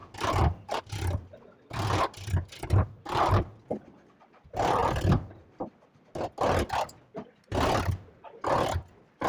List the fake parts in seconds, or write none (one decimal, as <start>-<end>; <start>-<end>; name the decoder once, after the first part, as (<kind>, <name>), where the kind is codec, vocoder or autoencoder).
none